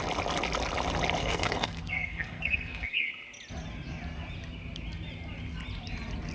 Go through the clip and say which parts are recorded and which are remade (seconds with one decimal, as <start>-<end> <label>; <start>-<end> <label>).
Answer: 0.0-1.2 recorded; 1.2-3.1 remade; 3.1-6.3 recorded